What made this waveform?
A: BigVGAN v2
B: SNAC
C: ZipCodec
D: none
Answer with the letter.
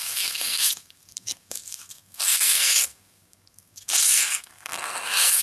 B